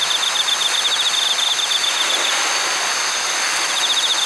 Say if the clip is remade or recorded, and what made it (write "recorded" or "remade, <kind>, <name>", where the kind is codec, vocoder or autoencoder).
recorded